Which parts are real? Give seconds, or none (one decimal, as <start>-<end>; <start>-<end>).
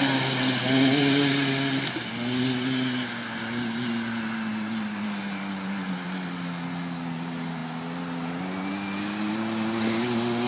0.0-10.5